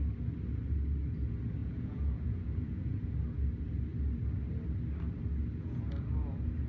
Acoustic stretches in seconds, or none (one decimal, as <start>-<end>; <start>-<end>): 0.0-1.6; 3.1-5.5